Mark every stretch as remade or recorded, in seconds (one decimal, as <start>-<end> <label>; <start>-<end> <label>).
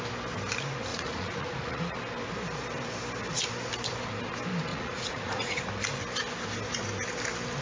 0.0-0.9 recorded; 0.9-2.0 remade; 2.0-4.7 recorded; 4.7-5.6 remade; 5.6-7.6 recorded